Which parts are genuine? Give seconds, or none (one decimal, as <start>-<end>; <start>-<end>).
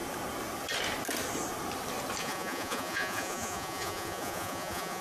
0.0-2.2